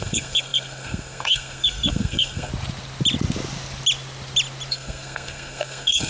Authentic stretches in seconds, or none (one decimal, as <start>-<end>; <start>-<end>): 2.5-4.7